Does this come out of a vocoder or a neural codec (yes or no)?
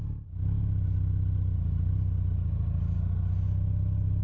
no